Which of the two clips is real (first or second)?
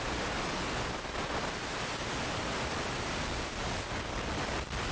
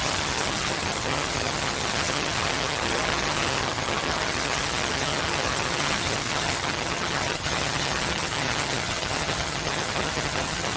first